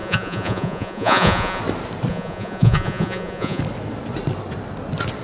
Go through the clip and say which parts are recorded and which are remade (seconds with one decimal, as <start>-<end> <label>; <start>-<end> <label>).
0.0-1.6 remade; 1.6-2.1 recorded; 2.1-3.6 remade; 3.6-5.2 recorded